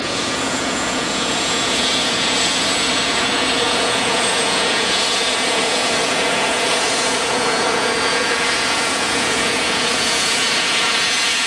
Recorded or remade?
remade